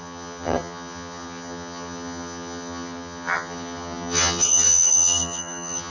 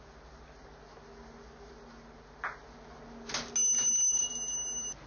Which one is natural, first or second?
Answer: second